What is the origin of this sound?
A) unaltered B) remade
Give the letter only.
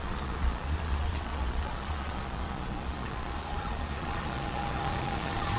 B